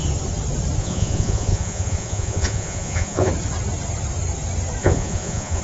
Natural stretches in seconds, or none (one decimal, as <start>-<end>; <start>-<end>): 0.0-0.8; 3.3-4.8